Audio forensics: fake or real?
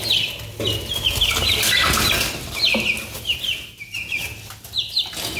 real